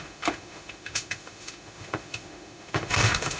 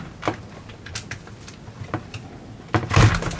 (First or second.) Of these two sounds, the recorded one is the second